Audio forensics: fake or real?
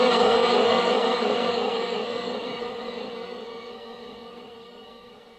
fake